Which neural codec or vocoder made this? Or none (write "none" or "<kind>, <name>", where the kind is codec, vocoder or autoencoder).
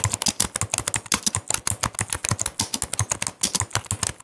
none